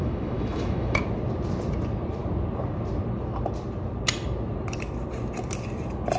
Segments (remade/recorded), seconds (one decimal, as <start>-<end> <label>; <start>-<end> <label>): 0.0-1.0 remade; 1.0-6.2 recorded